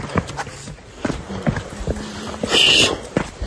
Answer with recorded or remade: recorded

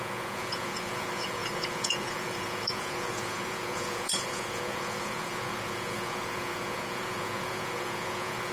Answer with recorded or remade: remade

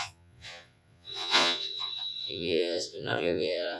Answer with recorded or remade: remade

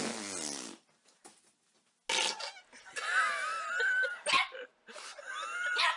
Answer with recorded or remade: recorded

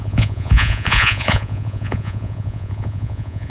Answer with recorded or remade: remade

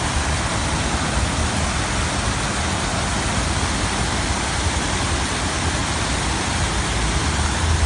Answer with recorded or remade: recorded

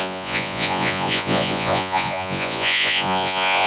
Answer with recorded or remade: remade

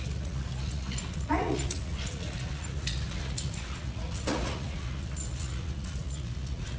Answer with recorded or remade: remade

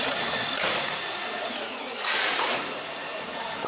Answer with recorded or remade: remade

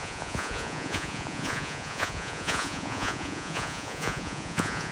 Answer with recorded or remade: remade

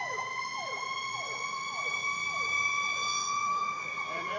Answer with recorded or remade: remade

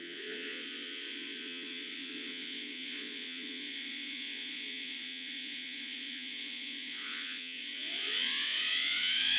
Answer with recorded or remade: remade